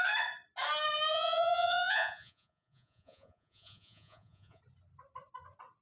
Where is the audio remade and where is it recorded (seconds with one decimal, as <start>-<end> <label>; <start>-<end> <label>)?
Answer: 0.0-1.1 recorded; 1.1-4.6 remade; 4.6-5.8 recorded